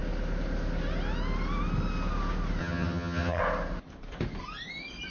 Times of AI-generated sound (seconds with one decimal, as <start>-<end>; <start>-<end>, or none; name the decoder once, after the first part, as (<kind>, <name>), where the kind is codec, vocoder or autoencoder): 2.6-3.4 (vocoder, HiFi-GAN)